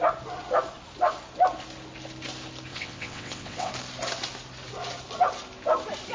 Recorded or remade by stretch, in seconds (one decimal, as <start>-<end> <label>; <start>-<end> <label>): 0.0-2.7 recorded; 2.7-3.7 remade; 3.7-6.1 recorded